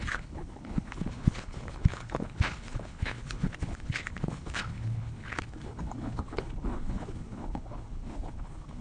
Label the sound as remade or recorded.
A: remade